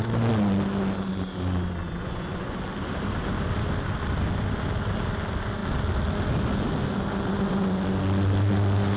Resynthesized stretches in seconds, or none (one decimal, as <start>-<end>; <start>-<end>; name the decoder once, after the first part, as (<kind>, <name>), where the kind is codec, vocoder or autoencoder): 2.0-2.6 (vocoder, Vocos)